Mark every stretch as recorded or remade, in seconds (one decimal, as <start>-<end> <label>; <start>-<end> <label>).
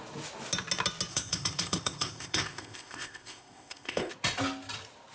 0.0-1.1 recorded; 1.1-4.1 remade; 4.1-5.1 recorded